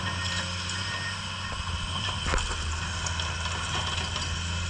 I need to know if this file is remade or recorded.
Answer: recorded